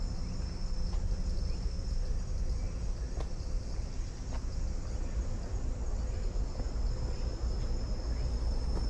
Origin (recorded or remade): recorded